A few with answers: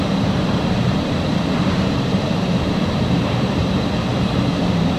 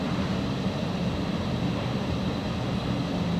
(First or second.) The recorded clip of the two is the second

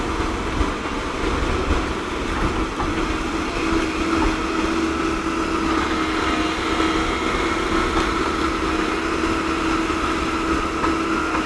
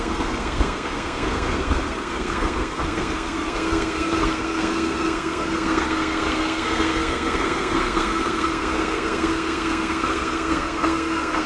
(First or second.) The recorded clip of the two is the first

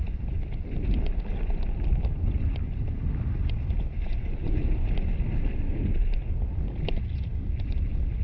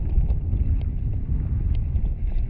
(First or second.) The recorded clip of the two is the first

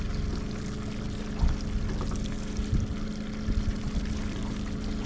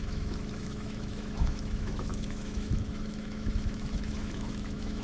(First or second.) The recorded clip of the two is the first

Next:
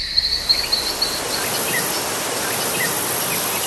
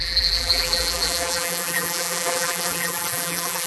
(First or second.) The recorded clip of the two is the first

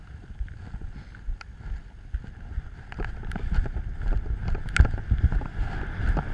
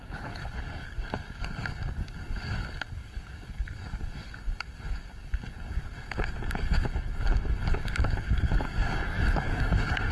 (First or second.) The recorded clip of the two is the first